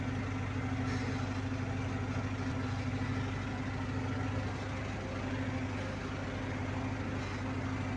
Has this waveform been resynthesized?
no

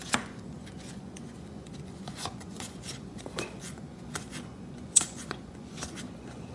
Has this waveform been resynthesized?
yes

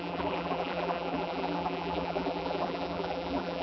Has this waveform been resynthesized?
yes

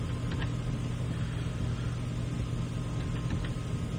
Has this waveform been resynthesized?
no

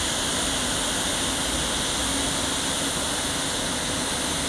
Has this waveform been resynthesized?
no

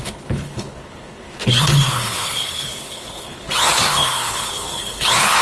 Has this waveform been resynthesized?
yes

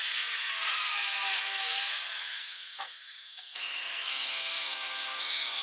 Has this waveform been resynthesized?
yes